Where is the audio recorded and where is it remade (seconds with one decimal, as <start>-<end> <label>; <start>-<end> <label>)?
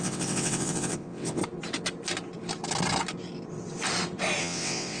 0.0-1.4 remade; 1.4-4.4 recorded; 4.4-5.0 remade